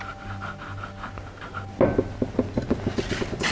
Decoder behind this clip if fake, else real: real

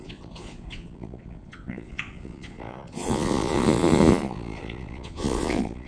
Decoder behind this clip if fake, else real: fake, vocoder, Vocos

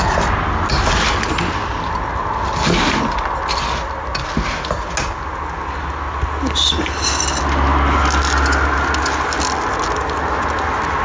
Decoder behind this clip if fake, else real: real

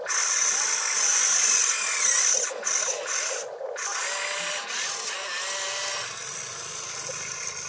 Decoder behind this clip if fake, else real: real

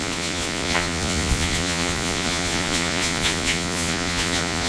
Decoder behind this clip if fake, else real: fake, vocoder, Vocos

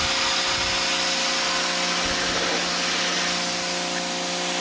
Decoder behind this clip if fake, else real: real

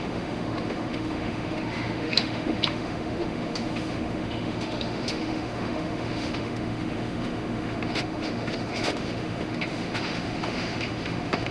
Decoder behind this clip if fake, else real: fake, autoencoder, DAC-VAE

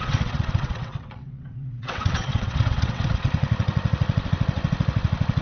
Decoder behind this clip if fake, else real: fake, vocoder, WaveNeXt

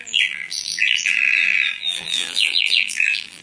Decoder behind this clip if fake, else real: fake, vocoder, BigVGAN v2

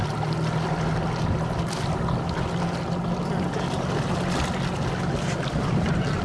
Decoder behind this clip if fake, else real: real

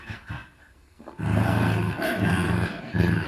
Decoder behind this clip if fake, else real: fake, codec, SNAC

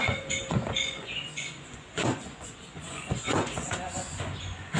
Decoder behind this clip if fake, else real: fake, vocoder, Vocos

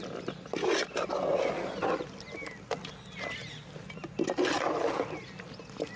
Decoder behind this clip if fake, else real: real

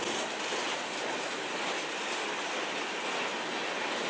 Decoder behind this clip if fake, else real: real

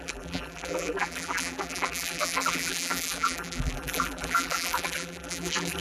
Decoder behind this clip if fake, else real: fake, vocoder, BigVGAN v2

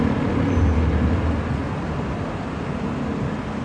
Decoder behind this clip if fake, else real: real